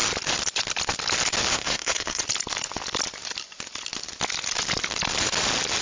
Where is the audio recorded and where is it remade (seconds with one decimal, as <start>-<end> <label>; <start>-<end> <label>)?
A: 0.0-1.5 recorded; 1.5-2.2 remade; 2.2-5.8 recorded